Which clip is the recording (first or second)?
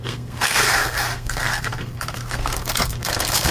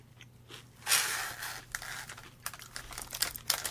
second